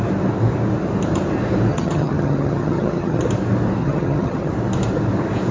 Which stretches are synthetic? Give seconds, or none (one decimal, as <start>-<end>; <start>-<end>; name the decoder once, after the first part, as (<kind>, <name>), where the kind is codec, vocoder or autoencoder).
1.7-3.2 (vocoder, HiFi-GAN); 3.8-4.5